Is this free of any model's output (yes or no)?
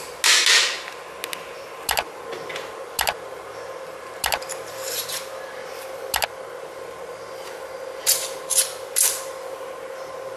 yes